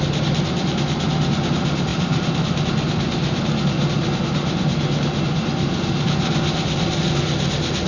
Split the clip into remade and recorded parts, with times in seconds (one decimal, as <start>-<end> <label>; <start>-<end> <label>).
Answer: 0.0-1.9 recorded; 1.9-2.6 remade; 2.6-7.9 recorded